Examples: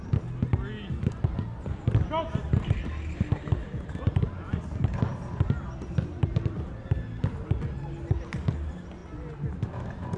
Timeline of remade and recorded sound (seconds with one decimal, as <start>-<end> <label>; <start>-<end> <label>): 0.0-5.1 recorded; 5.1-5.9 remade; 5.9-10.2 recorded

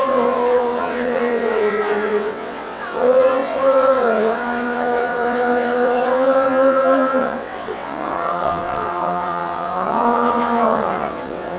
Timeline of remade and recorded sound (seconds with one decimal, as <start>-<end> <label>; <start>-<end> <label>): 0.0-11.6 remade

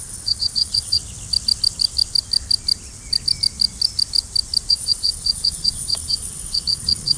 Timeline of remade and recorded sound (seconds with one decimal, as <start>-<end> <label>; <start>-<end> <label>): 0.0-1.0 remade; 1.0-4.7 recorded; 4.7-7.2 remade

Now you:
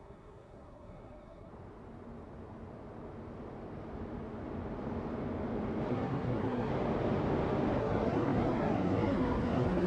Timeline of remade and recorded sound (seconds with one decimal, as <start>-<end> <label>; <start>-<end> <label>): 0.0-1.5 remade; 1.5-5.9 recorded; 5.9-6.7 remade; 6.7-7.8 recorded; 7.8-9.9 remade